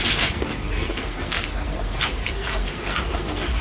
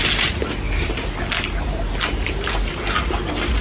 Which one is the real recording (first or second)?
second